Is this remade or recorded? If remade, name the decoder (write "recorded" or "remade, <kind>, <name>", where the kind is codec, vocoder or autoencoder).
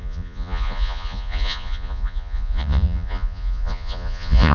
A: remade, vocoder, Vocos